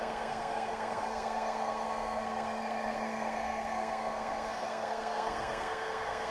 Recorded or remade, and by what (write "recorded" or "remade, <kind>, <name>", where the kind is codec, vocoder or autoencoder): remade, codec, SNAC